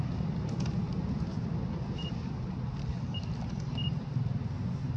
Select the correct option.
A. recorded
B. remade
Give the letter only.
A